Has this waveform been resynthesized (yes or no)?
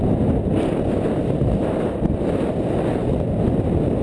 no